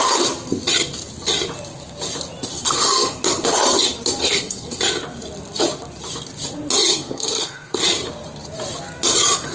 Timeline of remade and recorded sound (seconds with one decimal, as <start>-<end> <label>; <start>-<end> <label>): 0.0-2.6 recorded; 2.6-3.2 remade; 3.2-4.2 recorded; 4.2-4.8 remade; 4.8-6.9 recorded; 6.9-7.8 remade; 7.8-9.5 recorded